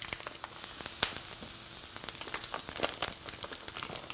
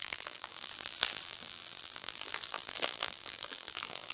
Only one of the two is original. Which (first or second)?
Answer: first